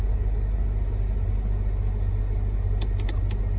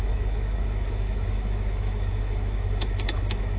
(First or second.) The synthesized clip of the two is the second